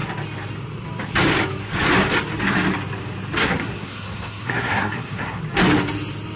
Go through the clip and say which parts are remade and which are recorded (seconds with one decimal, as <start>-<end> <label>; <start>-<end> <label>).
0.0-3.4 recorded; 3.4-5.4 remade; 5.4-6.4 recorded